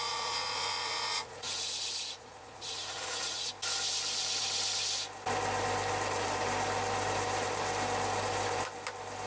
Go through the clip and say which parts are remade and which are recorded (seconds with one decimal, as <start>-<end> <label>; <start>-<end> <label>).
0.0-3.5 remade; 3.5-9.3 recorded